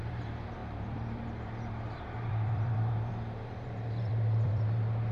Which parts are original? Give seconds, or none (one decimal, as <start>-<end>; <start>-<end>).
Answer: none